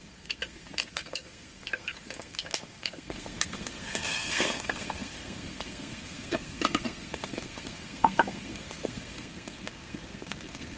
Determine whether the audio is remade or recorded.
remade